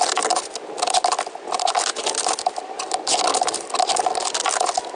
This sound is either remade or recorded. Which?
recorded